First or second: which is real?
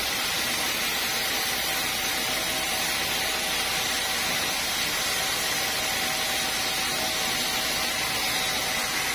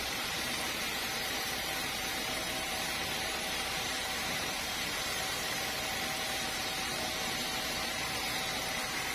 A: first